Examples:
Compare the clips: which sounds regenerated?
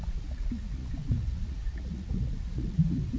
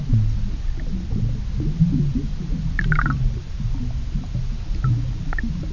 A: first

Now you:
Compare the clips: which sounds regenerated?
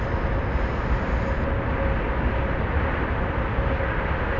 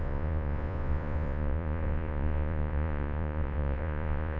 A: second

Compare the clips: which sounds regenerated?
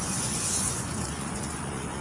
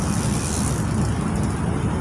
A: first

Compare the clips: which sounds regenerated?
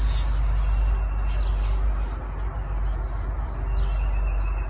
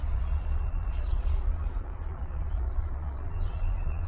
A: second